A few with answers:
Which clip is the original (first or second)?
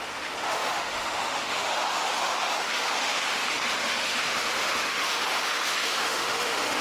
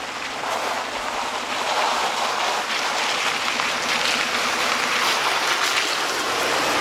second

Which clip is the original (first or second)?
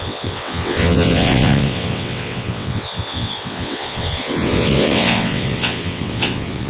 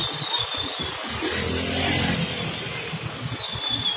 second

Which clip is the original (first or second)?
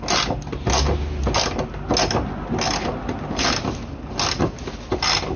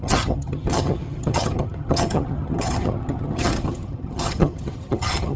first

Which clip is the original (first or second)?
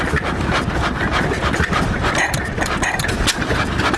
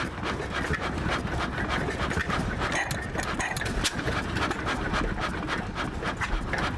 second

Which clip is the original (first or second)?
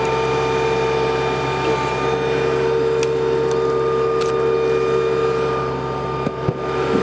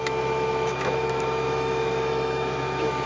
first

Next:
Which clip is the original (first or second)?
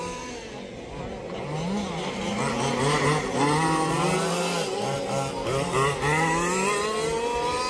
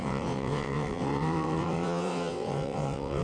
first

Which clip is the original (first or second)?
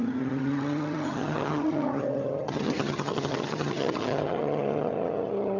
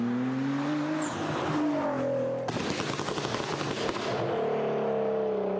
second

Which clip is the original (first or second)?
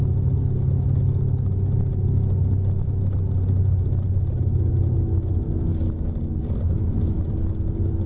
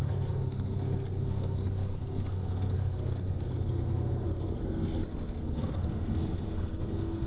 first